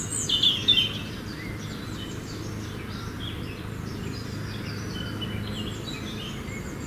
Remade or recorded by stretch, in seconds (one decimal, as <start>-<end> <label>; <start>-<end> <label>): 0.0-6.9 recorded